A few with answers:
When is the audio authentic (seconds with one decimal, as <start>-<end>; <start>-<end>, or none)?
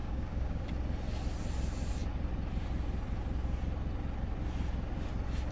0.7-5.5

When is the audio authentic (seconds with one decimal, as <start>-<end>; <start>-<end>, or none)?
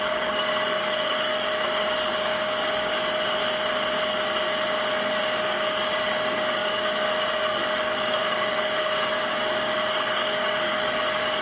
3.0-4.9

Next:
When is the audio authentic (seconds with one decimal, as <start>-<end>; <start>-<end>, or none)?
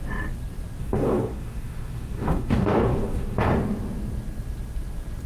0.0-0.8; 3.5-5.3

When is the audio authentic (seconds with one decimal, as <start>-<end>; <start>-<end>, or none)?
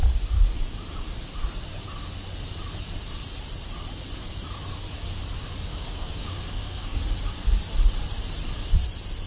0.0-5.7; 7.0-9.3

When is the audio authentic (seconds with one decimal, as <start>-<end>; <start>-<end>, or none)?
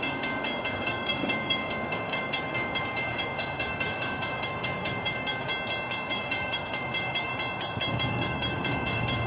5.5-6.1; 7.3-7.9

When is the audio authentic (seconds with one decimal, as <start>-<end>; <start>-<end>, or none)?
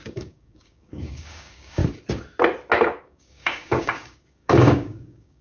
1.8-3.0